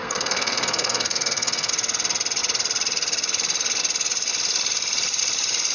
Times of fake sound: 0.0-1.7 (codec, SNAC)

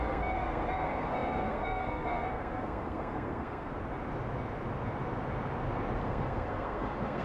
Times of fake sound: 0.0-3.7 (codec, SNAC); 6.0-7.2

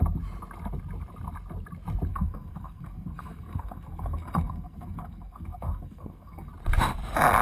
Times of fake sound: 2.1-6.5 (codec, SNAC)

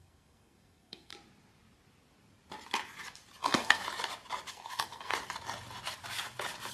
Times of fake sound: 0.0-1.1 (codec, SNAC); 3.4-3.8; 4.5-5.1

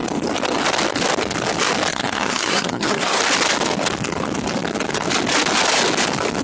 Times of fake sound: 1.9-3.2 (codec, SNAC)

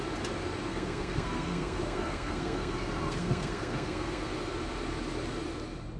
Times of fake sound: 0.7-4.3 (codec, SNAC)

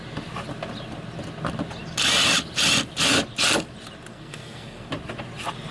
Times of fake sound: 4.1-4.9 (codec, SNAC)